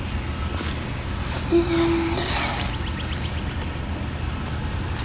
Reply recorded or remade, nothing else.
recorded